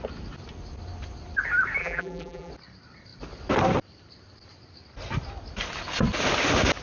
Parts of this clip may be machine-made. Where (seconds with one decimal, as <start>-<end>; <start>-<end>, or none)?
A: 1.8-2.5